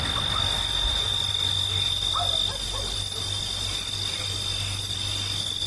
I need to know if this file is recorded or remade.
recorded